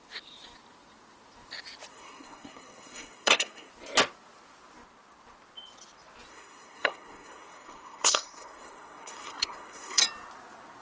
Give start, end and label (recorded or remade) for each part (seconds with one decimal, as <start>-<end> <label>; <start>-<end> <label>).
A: 0.0-1.9 recorded; 1.9-3.7 remade; 3.7-6.3 recorded; 6.3-10.0 remade; 10.0-10.8 recorded